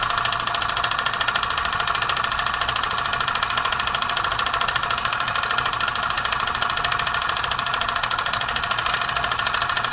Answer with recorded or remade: recorded